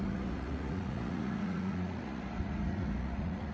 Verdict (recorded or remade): remade